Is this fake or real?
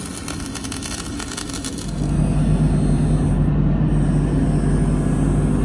real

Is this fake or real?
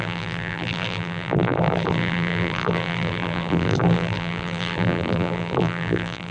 fake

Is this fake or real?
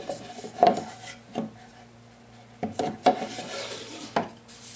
real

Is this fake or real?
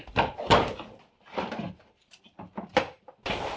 fake